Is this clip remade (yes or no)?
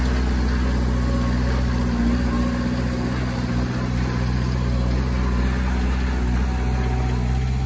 no